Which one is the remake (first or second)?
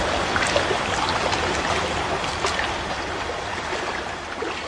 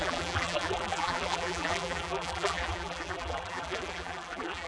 second